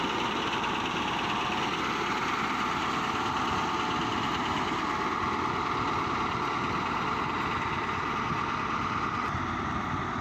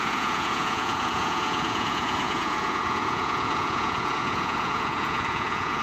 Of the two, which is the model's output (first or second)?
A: second